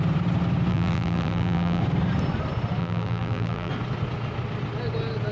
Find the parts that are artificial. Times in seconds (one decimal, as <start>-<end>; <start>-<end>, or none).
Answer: 0.7-1.8; 2.8-3.7